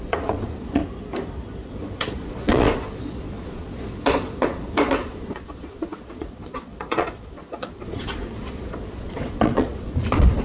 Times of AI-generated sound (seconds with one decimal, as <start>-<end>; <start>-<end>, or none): 0.0-0.8; 1.7-10.4